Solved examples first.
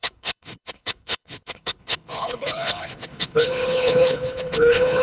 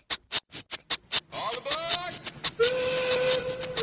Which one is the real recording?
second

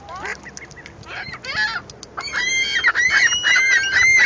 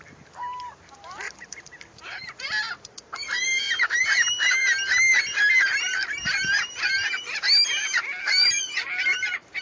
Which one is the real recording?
first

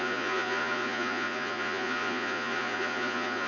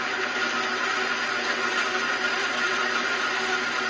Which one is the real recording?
second